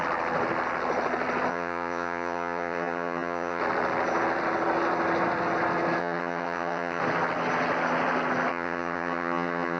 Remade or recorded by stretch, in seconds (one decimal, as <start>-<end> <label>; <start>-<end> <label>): 0.0-1.5 recorded; 1.5-3.6 remade; 3.6-6.0 recorded; 6.0-7.0 remade; 7.0-8.5 recorded; 8.5-9.8 remade